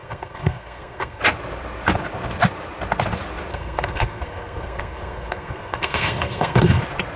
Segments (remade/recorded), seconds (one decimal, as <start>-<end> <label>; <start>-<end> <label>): 0.0-1.2 remade; 1.2-3.5 recorded; 3.5-6.8 remade; 6.8-7.2 recorded